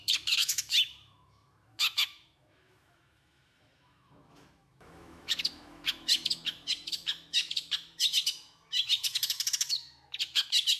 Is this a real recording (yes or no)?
no